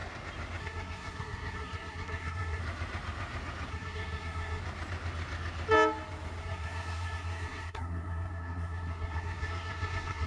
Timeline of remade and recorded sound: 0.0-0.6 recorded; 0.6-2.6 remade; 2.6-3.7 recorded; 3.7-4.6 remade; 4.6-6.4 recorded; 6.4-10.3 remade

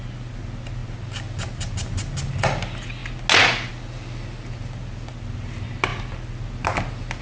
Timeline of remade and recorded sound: 0.0-7.2 recorded

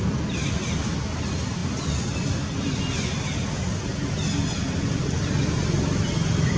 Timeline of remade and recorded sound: 0.0-6.6 recorded